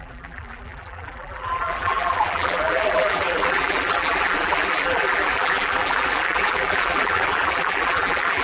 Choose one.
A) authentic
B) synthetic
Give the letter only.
B